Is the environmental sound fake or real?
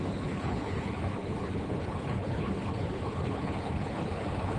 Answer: fake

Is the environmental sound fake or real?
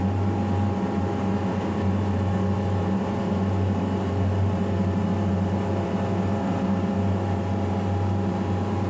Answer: real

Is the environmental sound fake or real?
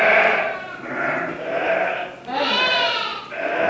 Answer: real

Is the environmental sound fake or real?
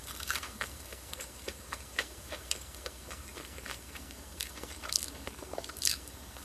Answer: fake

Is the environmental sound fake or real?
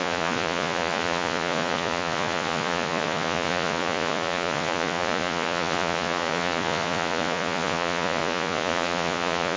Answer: fake